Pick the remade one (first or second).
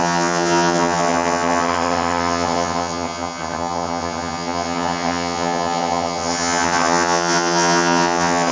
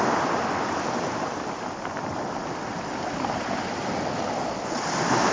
first